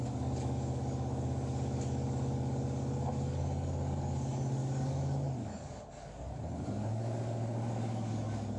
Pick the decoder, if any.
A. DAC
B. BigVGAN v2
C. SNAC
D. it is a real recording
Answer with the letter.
A